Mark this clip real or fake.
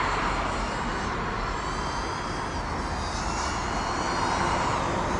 real